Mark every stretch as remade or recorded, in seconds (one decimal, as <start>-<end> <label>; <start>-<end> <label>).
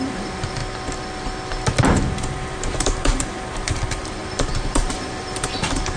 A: 0.0-0.6 remade; 0.6-2.1 recorded; 2.1-6.0 remade